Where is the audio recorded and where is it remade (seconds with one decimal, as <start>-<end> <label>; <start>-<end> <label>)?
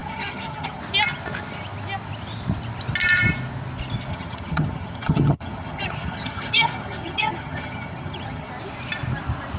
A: 0.0-0.8 remade; 0.8-4.1 recorded; 4.1-8.5 remade; 8.5-9.6 recorded